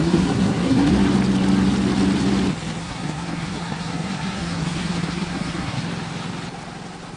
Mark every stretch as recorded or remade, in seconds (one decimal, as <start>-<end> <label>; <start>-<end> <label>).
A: 0.0-0.9 remade; 0.9-2.8 recorded; 2.8-5.8 remade; 5.8-7.2 recorded